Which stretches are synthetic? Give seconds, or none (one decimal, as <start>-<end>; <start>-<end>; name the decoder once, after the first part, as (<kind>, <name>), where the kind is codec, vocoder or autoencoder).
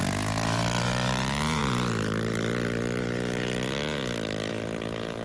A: none